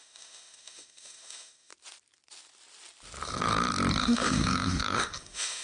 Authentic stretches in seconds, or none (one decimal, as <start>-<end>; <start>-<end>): 1.7-4.0